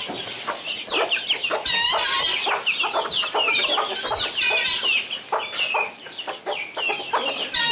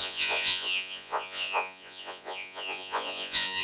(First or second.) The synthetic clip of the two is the second